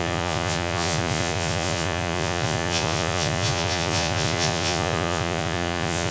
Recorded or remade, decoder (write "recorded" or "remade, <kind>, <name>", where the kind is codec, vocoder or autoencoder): remade, vocoder, Vocos